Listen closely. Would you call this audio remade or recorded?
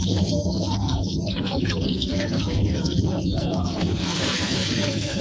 remade